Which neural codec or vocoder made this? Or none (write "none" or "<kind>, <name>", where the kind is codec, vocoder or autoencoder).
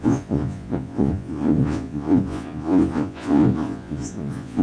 vocoder, Vocos